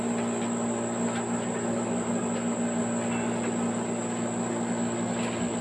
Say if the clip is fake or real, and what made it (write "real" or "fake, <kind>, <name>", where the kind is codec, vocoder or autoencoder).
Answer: real